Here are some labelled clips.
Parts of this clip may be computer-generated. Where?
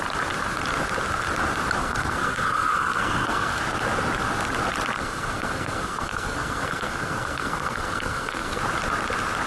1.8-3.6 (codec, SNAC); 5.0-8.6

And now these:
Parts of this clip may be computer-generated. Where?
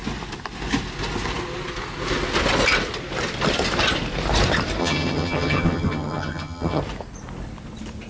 4.8-6.8 (vocoder, HiFi-GAN)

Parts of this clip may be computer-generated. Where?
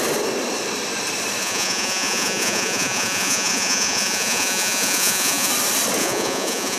1.4-5.5 (vocoder, Vocos); 6.0-6.8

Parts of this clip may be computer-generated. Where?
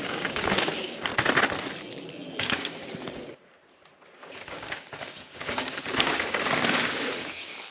0.0-1.1 (codec, DAC); 2.4-2.8; 4.2-7.7